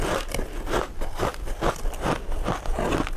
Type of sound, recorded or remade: remade